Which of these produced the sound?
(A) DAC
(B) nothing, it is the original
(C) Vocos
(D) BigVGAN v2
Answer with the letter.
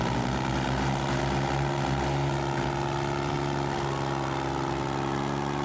B